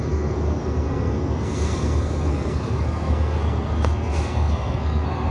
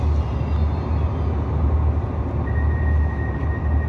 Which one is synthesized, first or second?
first